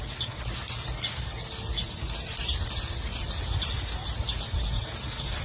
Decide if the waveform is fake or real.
real